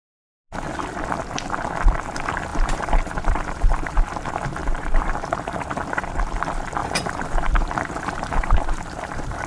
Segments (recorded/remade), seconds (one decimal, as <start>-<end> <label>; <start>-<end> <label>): 0.0-2.5 recorded; 2.5-4.0 remade; 4.0-4.6 recorded; 4.6-5.7 remade; 5.7-6.8 recorded; 6.8-9.5 remade